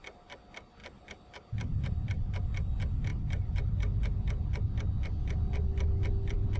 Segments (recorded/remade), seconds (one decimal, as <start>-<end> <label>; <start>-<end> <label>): 0.0-0.8 recorded; 0.8-2.4 remade; 2.4-3.1 recorded; 3.1-4.0 remade; 4.0-6.6 recorded